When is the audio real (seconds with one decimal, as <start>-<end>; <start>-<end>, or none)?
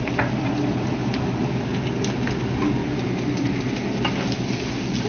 0.0-5.1